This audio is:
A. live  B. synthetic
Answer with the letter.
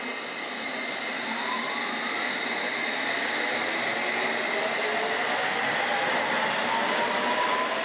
A